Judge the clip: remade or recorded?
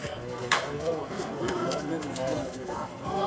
remade